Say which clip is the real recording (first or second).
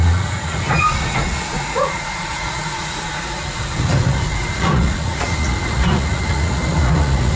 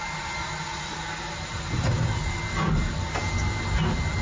second